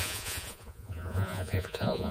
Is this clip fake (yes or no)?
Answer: yes